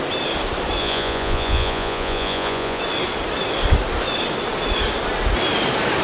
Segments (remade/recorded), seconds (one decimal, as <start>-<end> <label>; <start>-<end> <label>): 0.0-0.8 recorded; 0.8-2.8 remade; 2.8-6.0 recorded